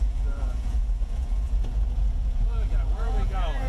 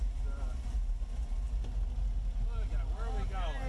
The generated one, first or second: first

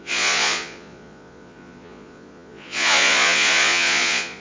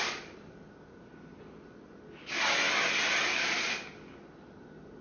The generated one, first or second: first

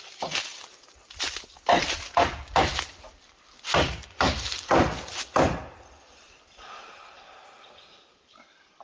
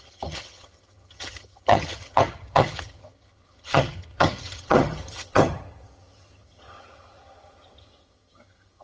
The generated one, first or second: second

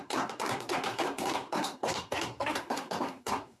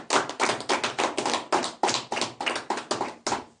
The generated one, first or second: first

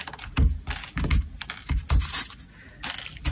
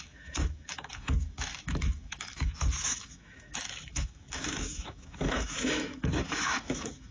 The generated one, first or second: second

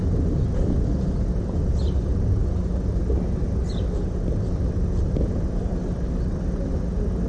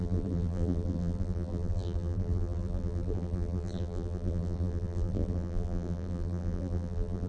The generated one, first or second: second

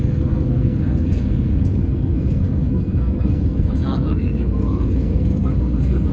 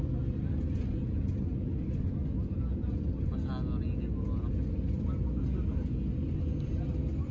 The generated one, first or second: first